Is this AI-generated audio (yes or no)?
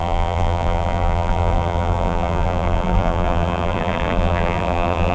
yes